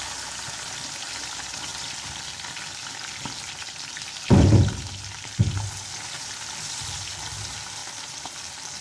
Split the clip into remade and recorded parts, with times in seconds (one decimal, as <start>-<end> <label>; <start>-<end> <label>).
0.0-8.8 recorded